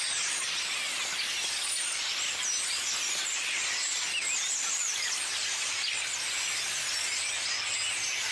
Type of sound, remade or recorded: recorded